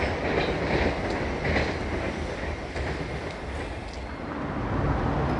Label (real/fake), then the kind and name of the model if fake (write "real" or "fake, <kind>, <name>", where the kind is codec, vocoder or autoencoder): real